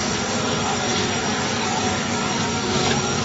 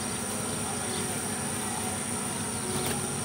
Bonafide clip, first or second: second